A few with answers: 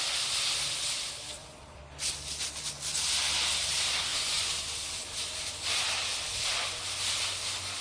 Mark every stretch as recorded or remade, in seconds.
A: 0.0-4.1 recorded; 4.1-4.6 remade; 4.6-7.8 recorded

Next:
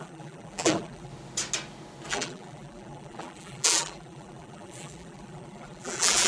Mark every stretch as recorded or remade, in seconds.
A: 0.0-1.1 remade; 1.1-2.1 recorded; 2.1-6.3 remade

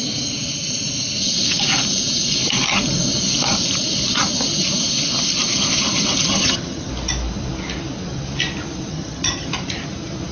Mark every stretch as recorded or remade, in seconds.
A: 0.0-6.3 recorded; 6.3-6.9 remade; 6.9-8.9 recorded; 8.9-9.5 remade; 9.5-10.3 recorded

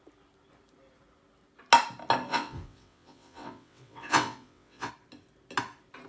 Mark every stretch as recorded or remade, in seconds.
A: 0.0-2.3 recorded; 2.3-4.9 remade; 4.9-6.1 recorded

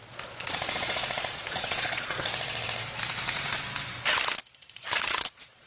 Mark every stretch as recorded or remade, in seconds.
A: 0.0-2.2 remade; 2.2-4.6 recorded; 4.6-5.7 remade

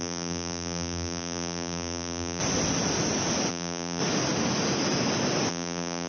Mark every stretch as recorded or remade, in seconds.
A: 0.0-2.4 remade; 2.4-3.5 recorded; 3.5-4.0 remade; 4.0-5.5 recorded; 5.5-6.1 remade

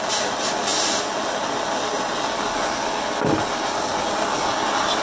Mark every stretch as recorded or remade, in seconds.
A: 0.0-5.0 recorded